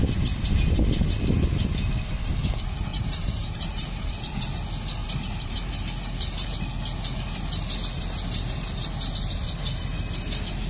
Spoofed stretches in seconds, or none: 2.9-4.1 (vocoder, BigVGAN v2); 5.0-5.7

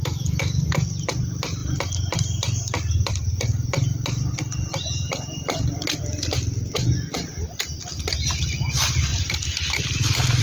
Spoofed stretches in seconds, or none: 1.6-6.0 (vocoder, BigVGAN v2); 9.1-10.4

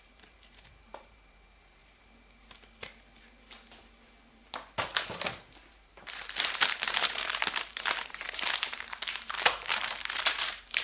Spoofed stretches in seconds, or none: 0.0-1.8 (vocoder, BigVGAN v2); 5.7-10.8